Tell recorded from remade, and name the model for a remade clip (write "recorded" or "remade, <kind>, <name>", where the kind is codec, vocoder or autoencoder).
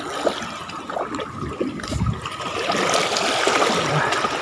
recorded